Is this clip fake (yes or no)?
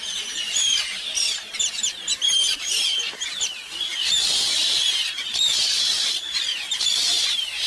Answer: yes